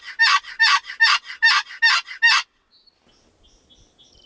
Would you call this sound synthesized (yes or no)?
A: no